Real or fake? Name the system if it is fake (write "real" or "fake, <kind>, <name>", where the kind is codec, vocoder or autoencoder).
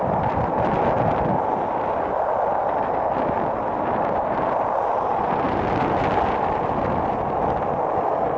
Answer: real